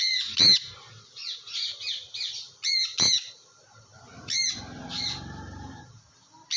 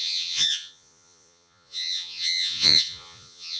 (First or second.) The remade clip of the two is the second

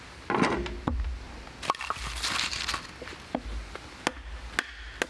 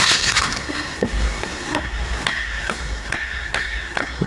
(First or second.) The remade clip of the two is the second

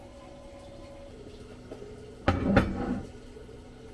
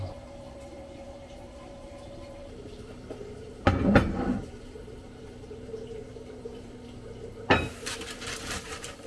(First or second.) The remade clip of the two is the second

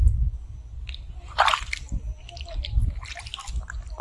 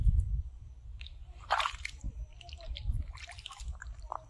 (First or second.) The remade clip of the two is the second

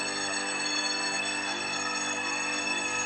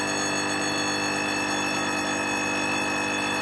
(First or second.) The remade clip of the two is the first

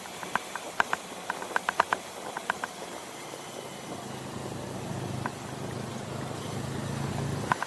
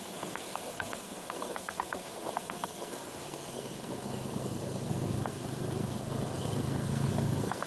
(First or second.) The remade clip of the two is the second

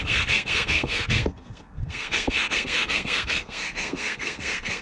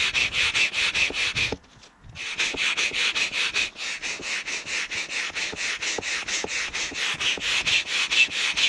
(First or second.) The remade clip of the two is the first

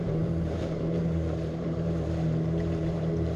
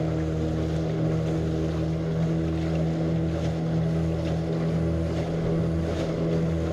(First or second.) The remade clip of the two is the first